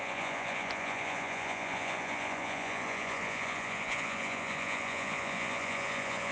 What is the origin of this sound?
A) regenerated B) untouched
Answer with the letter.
A